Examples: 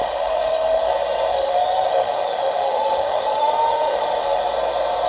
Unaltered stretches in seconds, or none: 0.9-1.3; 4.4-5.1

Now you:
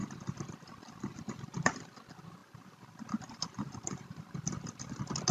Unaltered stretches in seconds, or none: 0.0-5.3